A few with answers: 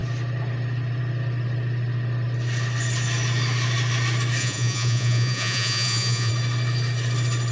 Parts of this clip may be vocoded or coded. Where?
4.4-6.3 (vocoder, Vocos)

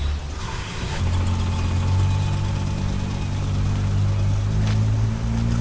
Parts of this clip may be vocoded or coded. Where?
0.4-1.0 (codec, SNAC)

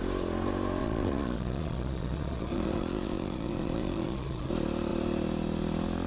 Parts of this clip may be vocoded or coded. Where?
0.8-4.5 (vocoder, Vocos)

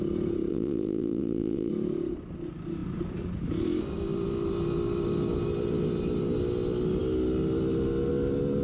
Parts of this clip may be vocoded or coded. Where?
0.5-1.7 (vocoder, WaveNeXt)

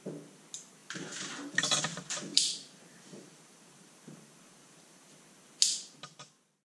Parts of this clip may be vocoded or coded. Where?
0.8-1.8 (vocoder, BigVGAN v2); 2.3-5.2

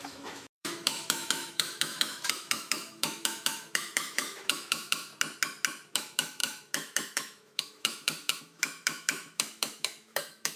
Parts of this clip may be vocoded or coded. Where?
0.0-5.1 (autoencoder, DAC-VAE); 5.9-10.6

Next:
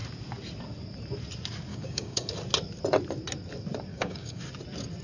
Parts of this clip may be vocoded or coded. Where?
1.7-2.3 (codec, DAC); 3.9-4.4

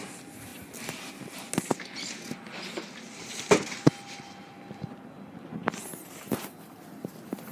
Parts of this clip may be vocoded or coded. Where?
0.0-0.5 (vocoder, BigVGAN v2); 4.4-5.6; 6.7-7.5